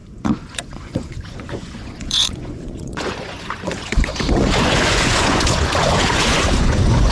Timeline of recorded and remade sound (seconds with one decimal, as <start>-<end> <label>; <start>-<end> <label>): 0.0-7.1 remade